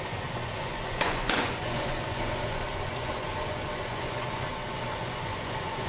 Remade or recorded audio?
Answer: remade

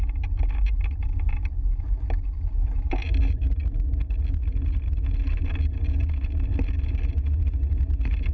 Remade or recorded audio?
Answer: recorded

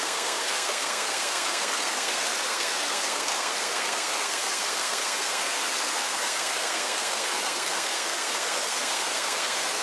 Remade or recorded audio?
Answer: remade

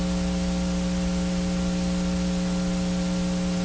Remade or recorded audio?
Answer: recorded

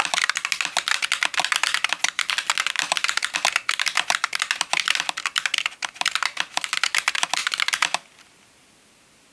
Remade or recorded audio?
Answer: recorded